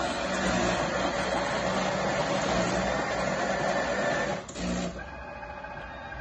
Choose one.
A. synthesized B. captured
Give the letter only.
B